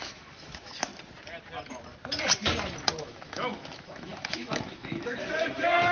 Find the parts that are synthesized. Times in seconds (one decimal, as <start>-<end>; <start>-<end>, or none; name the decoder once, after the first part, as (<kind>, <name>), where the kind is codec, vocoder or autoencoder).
0.0-0.9 (autoencoder, DAC-VAE); 3.0-5.9